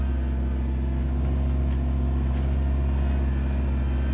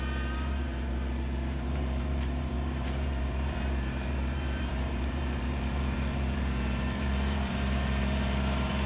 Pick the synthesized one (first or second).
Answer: second